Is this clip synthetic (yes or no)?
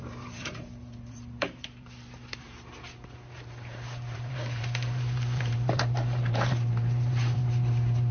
yes